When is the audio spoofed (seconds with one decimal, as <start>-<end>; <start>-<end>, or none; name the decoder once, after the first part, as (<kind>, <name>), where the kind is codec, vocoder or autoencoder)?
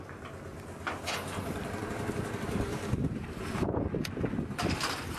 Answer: 2.7-3.8 (vocoder, BigVGAN v2)